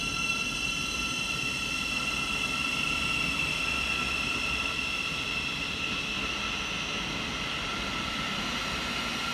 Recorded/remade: recorded